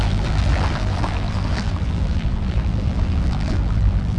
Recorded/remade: remade